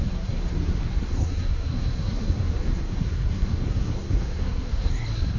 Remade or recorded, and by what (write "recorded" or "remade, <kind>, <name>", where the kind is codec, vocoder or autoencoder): remade, codec, SNAC